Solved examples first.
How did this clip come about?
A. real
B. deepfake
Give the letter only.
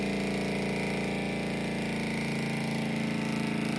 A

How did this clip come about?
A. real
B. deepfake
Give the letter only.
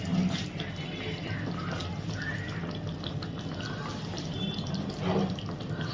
A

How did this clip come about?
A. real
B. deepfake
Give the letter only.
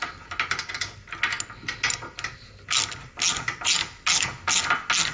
A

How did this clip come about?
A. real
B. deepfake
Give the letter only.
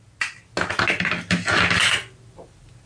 A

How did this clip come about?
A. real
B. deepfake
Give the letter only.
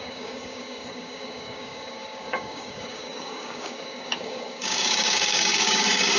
B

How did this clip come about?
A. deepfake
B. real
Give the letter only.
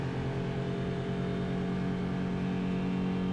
B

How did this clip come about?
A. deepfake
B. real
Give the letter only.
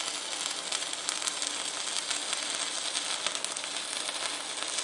B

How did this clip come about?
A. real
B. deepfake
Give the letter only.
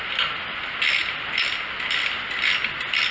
A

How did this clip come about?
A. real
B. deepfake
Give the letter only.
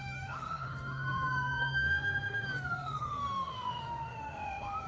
B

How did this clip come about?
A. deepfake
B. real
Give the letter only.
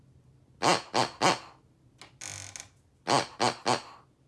B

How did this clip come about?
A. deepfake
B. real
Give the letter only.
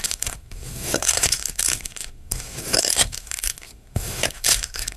A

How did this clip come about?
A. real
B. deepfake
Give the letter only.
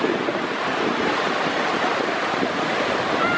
A